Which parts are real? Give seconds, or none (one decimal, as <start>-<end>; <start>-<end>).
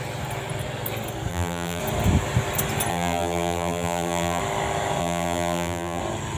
0.0-1.3; 1.8-2.9; 4.4-5.0; 6.0-6.4